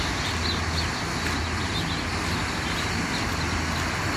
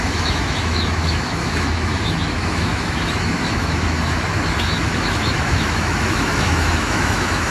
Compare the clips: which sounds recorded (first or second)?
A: first